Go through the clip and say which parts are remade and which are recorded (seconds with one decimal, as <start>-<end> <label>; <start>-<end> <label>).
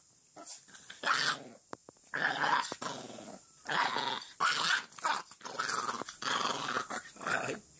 0.0-7.8 recorded